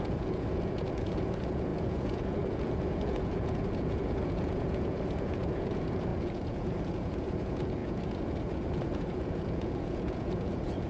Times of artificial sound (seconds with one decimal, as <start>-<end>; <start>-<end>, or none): 0.0-10.9